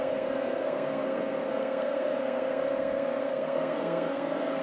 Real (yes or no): no